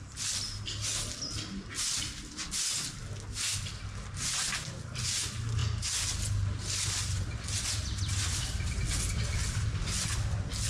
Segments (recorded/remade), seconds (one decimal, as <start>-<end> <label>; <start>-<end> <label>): 0.0-10.7 recorded